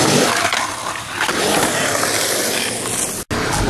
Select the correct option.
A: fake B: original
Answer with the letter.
B